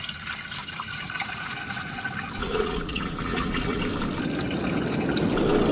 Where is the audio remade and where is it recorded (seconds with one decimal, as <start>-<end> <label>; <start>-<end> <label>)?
0.0-0.6 recorded; 0.6-1.9 remade; 1.9-2.4 recorded; 2.4-3.8 remade; 3.8-5.7 recorded